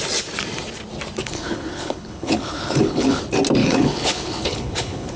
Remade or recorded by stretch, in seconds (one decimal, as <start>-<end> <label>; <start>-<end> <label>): 0.0-1.2 recorded; 1.2-3.2 remade; 3.2-3.6 recorded; 3.6-5.2 remade